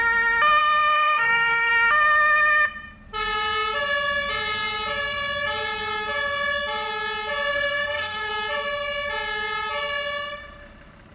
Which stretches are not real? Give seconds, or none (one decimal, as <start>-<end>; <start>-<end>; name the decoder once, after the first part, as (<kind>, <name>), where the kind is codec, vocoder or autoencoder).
0.6-1.7 (codec, SNAC); 7.5-8.3